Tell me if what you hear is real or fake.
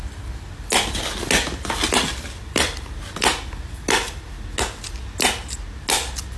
real